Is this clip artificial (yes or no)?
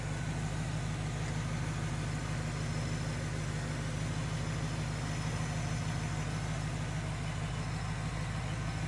no